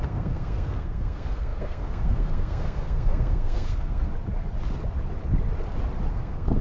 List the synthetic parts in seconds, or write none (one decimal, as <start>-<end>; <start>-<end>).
0.0-4.1; 6.1-6.6